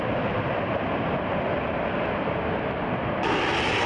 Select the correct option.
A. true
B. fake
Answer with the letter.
A